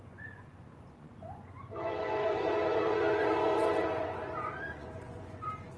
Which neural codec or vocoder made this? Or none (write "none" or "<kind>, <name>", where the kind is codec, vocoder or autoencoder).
vocoder, Vocos